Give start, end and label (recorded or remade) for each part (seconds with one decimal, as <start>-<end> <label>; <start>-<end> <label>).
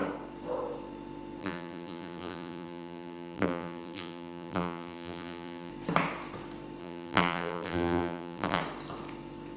0.0-1.4 recorded; 1.4-5.7 remade; 5.7-6.8 recorded; 6.8-8.6 remade; 8.6-9.6 recorded